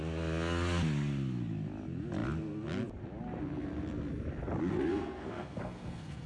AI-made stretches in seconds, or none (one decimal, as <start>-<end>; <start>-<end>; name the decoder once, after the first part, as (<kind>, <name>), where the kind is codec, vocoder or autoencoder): 4.9-6.3 (codec, SNAC)